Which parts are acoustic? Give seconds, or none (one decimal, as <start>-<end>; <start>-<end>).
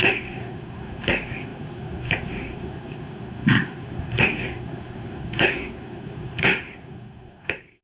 none